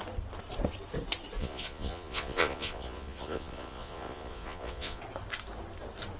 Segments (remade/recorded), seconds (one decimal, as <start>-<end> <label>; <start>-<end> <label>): 0.0-1.4 recorded; 1.4-5.0 remade; 5.0-6.2 recorded